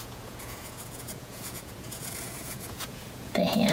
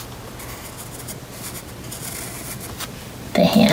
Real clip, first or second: second